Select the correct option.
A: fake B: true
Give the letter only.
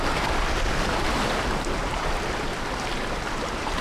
B